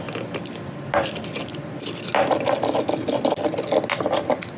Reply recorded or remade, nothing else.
recorded